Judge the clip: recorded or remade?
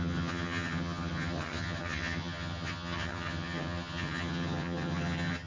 remade